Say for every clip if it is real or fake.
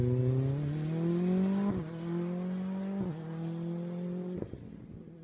real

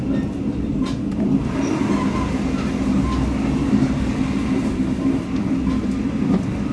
real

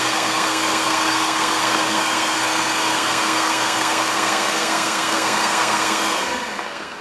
fake